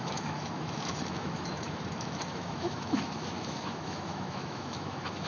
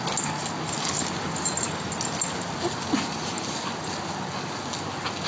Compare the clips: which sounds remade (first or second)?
first